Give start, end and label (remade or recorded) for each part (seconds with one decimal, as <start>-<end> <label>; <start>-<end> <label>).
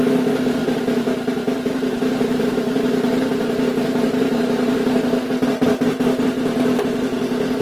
0.0-0.6 recorded; 0.6-5.0 remade; 5.0-7.6 recorded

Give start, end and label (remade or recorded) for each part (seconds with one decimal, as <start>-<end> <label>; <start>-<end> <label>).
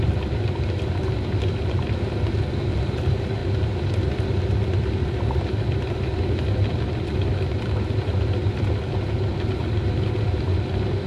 0.0-11.1 recorded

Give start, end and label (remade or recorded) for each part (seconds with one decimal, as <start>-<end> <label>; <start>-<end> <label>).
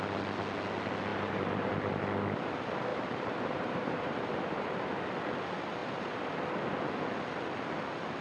0.0-1.1 recorded; 1.1-1.7 remade; 1.7-2.9 recorded; 2.9-5.2 remade; 5.2-8.2 recorded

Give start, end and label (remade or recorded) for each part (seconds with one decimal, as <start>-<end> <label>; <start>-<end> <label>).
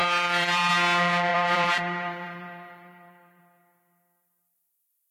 0.0-0.7 remade; 0.7-1.3 recorded; 1.3-3.4 remade; 3.4-5.1 recorded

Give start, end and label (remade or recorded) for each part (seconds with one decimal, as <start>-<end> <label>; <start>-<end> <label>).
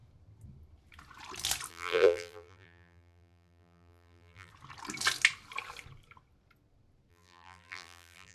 0.0-1.7 recorded; 1.7-4.5 remade; 4.5-7.1 recorded; 7.1-8.3 remade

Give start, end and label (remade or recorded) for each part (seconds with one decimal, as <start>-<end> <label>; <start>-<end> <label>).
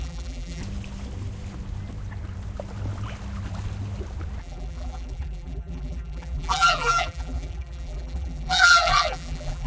0.0-0.6 remade; 0.6-4.4 recorded; 4.4-9.7 remade